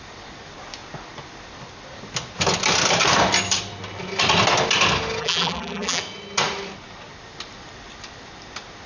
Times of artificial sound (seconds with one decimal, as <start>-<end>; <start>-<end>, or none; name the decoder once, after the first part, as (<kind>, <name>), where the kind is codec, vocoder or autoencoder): 5.2-6.0 (vocoder, BigVGAN v2)

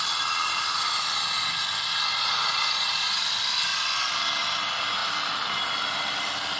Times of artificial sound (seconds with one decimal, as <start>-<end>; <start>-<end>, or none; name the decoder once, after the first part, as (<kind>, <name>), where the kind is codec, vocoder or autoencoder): 2.1-3.1 (vocoder, Vocos)

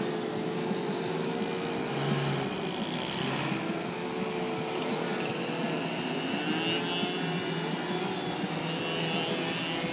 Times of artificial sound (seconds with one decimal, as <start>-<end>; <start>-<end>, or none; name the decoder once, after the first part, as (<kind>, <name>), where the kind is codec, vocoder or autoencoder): 5.1-6.4 (vocoder, BigVGAN v2)

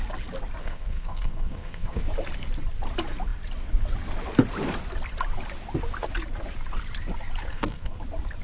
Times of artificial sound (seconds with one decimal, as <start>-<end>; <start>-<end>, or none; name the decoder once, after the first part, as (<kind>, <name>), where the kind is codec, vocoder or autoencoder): 0.6-2.0 (codec, SNAC); 7.5-8.0